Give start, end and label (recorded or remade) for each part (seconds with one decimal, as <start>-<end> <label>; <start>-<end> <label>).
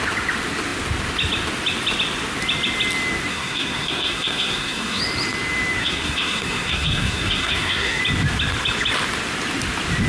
0.0-3.3 recorded; 3.3-5.0 remade; 5.0-5.8 recorded; 5.8-8.0 remade; 8.0-10.1 recorded